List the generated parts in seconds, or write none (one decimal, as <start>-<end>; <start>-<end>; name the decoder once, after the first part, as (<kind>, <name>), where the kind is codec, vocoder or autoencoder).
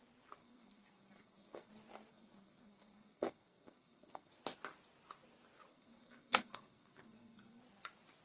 0.4-1.7 (codec, SNAC); 2.1-4.3; 5.7-7.6